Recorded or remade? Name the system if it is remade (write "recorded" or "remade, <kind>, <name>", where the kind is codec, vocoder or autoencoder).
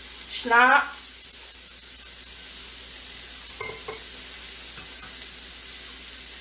recorded